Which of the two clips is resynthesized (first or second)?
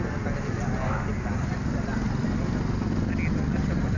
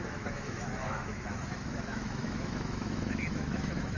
second